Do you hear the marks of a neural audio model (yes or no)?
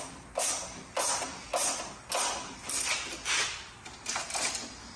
no